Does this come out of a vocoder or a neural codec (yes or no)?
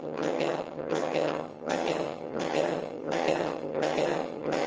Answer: yes